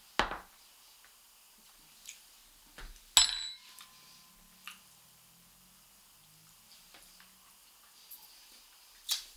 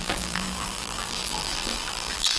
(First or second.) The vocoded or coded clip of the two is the second